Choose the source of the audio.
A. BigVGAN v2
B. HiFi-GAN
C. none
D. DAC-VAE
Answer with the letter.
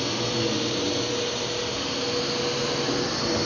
C